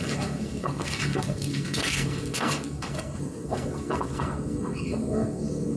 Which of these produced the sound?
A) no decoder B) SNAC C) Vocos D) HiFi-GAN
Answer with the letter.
B